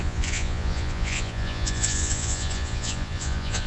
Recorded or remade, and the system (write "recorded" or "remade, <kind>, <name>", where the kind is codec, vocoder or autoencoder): remade, vocoder, Vocos